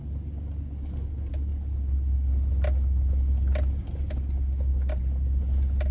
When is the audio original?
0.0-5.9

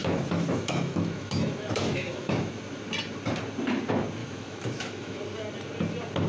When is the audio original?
2.5-4.2; 5.2-6.3

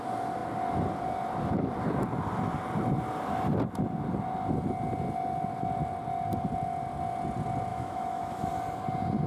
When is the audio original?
0.0-7.7; 8.5-9.3

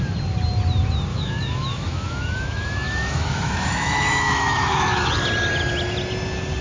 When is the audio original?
0.0-1.1; 5.1-6.6

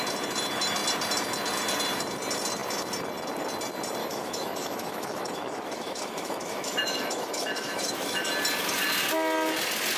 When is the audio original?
0.0-4.0; 8.3-10.0